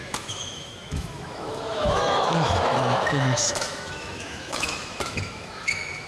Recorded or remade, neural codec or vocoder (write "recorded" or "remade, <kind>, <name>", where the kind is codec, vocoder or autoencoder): remade, autoencoder, DAC-VAE